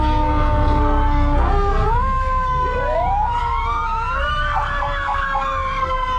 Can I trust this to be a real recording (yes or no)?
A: no